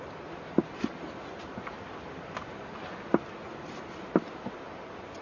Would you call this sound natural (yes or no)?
yes